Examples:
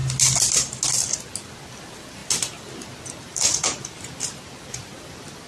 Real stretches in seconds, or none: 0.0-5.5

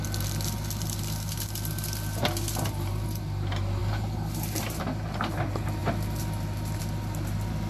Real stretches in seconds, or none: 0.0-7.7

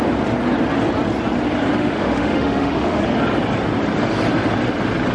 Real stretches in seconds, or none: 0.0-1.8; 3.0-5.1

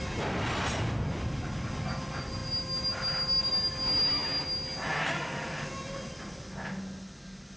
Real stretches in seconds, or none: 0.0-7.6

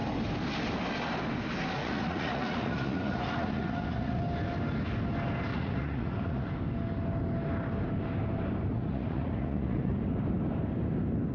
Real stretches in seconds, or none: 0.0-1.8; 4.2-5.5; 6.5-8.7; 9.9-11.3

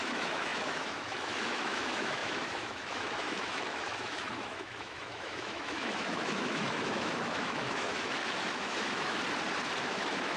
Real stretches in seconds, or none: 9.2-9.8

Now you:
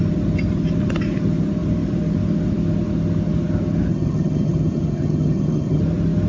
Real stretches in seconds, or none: 0.0-3.9; 5.8-6.3

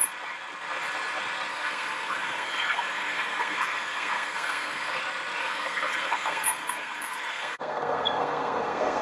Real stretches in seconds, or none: 0.0-1.5; 5.0-5.4